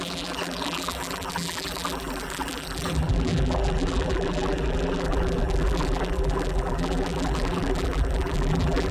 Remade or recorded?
remade